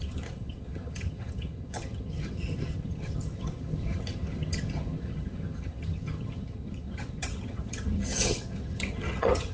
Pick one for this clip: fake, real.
fake